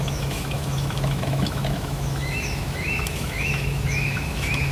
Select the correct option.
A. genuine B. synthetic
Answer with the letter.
B